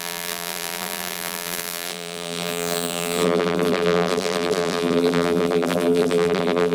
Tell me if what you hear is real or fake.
fake